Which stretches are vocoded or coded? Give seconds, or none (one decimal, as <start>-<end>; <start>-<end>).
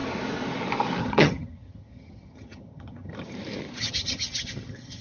1.0-3.1; 3.8-5.0